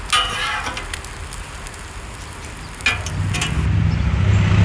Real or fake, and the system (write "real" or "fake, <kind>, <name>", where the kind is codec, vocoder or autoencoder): real